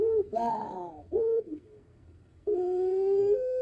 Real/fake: fake